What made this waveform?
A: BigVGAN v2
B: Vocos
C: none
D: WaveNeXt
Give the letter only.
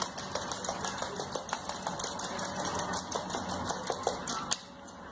C